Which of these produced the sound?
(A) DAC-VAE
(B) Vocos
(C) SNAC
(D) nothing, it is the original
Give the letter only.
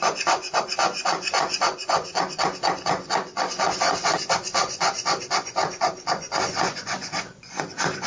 B